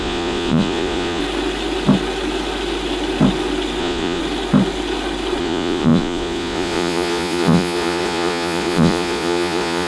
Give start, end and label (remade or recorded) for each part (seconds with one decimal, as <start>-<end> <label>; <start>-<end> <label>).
0.0-1.2 remade; 1.2-3.8 recorded; 3.8-4.2 remade; 4.2-5.4 recorded; 5.4-9.9 remade